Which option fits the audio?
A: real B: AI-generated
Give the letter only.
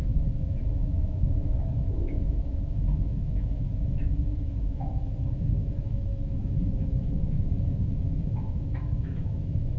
B